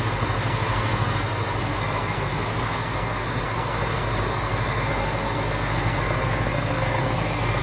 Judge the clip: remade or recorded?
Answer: remade